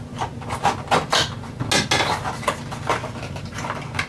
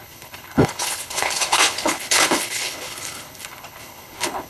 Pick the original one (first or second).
first